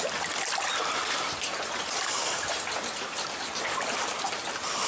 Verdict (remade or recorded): recorded